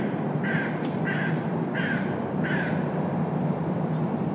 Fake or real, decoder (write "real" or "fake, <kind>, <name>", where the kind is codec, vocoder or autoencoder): real